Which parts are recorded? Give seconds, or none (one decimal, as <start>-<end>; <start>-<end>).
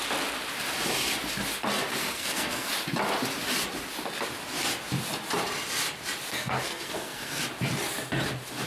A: 0.0-2.0; 2.7-6.3; 7.4-8.7